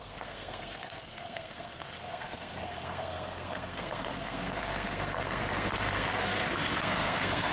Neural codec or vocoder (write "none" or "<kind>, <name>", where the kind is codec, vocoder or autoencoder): codec, SNAC